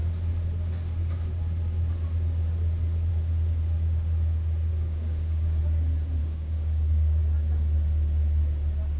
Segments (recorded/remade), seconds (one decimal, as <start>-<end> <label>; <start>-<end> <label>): 0.0-4.7 recorded; 4.7-5.6 remade; 5.6-6.2 recorded; 6.2-7.2 remade; 7.2-9.0 recorded